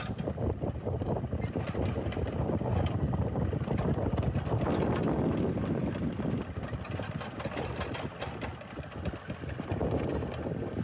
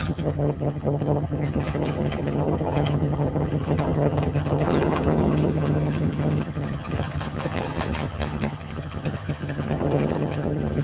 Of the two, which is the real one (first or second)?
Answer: first